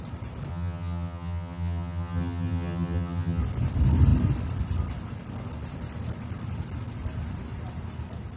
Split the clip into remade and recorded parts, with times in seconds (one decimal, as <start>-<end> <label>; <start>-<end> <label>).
0.0-0.5 recorded; 0.5-3.4 remade; 3.4-8.4 recorded